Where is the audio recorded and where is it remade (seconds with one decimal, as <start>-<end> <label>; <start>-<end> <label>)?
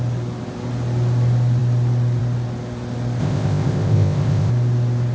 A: 0.0-3.2 recorded; 3.2-4.5 remade; 4.5-5.1 recorded